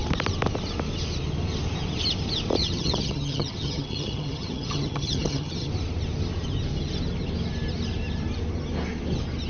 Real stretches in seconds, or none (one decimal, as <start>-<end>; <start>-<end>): 0.0-2.6; 5.7-9.5